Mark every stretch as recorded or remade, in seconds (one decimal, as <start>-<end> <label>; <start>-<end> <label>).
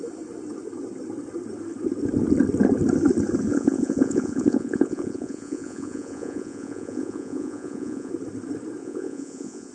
0.0-3.5 recorded; 3.5-8.1 remade; 8.1-8.8 recorded; 8.8-9.7 remade